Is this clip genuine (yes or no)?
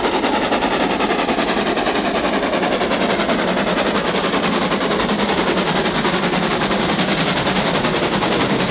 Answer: yes